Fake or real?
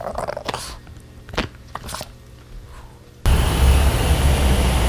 real